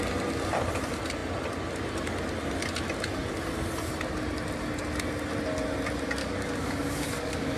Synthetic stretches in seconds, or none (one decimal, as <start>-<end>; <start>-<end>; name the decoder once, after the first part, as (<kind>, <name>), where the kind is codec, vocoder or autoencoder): 6.2-7.6 (codec, DAC)